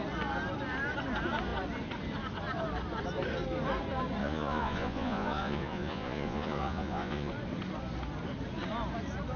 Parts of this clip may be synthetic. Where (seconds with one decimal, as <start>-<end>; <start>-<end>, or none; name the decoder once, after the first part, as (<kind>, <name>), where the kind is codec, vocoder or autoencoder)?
4.2-7.3 (vocoder, Vocos)